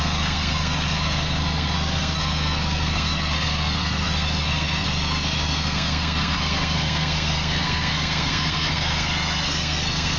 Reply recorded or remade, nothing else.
remade